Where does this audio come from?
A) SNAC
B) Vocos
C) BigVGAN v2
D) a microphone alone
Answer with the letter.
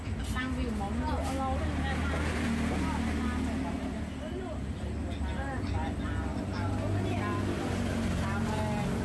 D